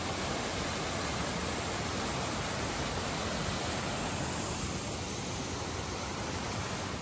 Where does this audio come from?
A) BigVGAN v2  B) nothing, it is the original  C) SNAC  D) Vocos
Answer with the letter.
B